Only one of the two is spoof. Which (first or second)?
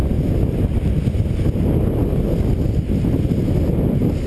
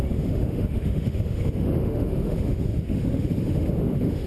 second